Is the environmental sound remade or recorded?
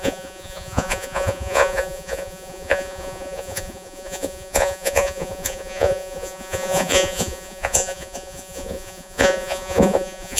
remade